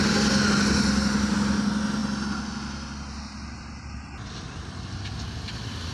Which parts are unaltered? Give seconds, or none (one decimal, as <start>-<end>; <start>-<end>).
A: 0.0-5.9